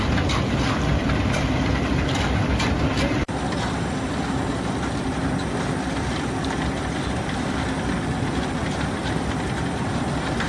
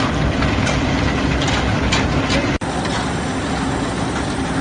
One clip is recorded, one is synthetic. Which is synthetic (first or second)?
first